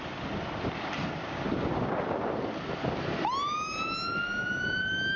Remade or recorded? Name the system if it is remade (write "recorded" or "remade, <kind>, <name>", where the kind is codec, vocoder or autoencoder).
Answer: recorded